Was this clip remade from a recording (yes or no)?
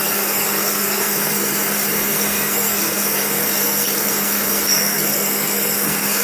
yes